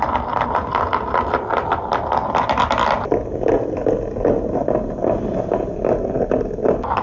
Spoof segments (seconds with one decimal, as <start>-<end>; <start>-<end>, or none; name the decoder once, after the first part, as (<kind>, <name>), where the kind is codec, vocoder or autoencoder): none